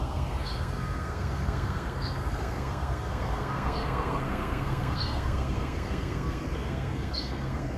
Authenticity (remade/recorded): remade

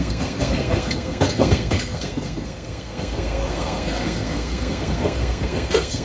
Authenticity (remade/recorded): remade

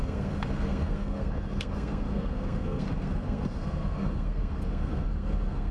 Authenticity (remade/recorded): remade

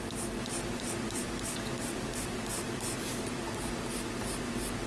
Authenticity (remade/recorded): recorded